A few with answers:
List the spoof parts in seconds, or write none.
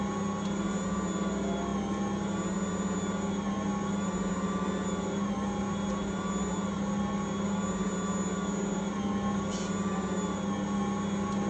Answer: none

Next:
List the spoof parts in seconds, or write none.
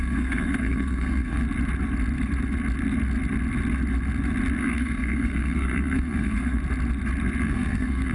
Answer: 0.0-1.4 (codec, SNAC); 4.6-6.6; 7.4-8.1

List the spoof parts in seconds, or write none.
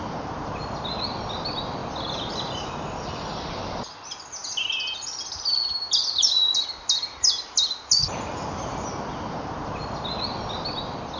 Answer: none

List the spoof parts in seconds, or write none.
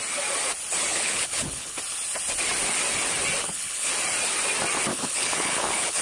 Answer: 0.9-1.8 (codec, HILCodec); 3.4-3.9; 4.9-6.0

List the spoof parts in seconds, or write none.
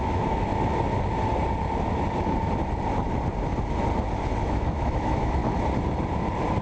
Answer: 0.0-0.5 (autoencoder, DAC-VAE); 4.4-5.4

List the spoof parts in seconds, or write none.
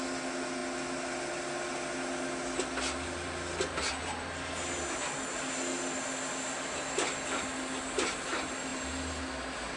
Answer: none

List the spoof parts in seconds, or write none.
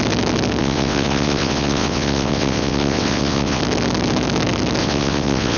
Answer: 0.6-3.6 (vocoder, WaveNeXt); 4.8-5.6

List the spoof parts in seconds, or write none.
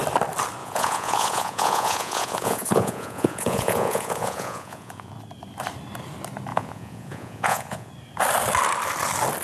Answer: 0.6-5.1 (vocoder, Vocos); 6.5-7.9